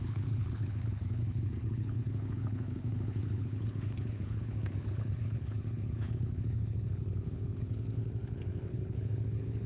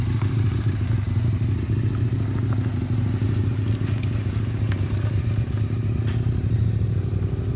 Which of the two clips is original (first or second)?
second